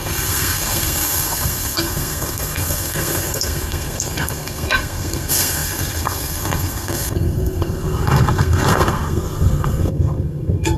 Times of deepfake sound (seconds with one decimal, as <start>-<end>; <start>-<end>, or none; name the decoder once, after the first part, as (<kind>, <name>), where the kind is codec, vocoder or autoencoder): 0.0-10.8 (codec, SNAC)